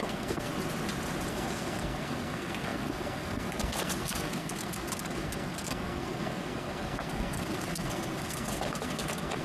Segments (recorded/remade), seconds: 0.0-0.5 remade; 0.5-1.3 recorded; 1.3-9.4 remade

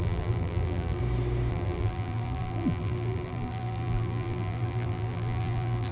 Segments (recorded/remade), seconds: 0.0-1.0 remade; 1.0-1.5 recorded; 1.5-5.9 remade